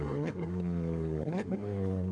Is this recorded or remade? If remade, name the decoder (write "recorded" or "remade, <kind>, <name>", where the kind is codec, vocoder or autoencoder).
remade, codec, SNAC